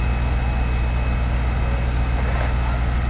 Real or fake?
real